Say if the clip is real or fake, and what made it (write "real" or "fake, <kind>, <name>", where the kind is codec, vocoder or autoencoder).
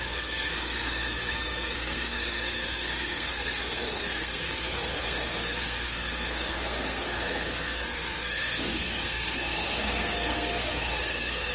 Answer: fake, codec, SNAC